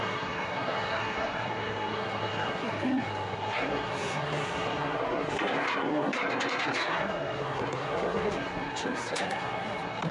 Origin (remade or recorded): remade